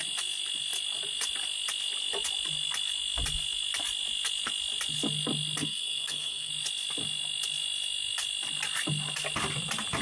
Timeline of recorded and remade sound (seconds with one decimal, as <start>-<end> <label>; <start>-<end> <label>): 0.0-5.6 recorded; 5.6-6.5 remade; 6.5-10.0 recorded